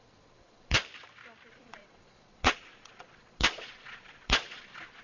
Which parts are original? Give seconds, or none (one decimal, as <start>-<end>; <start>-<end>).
0.8-1.5